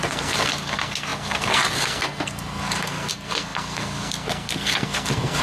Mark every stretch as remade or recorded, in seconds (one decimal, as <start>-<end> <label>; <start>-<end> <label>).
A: 0.0-5.4 remade